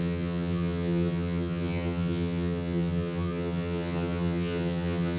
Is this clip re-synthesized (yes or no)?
yes